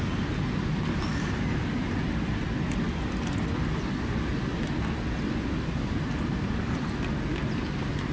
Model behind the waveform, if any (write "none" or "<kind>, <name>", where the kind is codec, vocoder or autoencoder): none